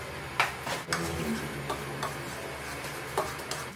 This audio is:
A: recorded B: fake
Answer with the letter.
A